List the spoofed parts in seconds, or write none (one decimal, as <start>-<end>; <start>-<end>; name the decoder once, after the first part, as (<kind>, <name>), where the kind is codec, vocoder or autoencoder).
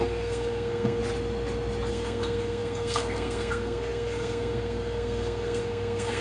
0.0-1.0 (codec, SNAC); 1.9-6.2